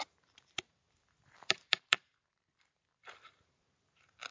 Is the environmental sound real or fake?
fake